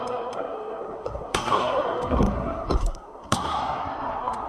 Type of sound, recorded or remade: remade